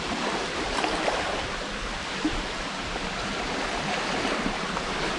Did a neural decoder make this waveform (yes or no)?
no